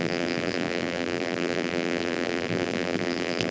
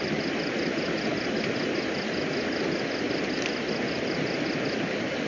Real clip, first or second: second